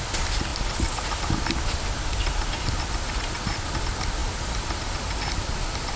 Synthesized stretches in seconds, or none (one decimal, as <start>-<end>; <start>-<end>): none